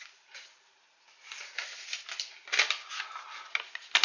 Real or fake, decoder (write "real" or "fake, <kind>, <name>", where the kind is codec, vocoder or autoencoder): real